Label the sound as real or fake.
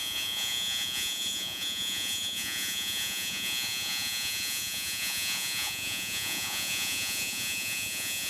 fake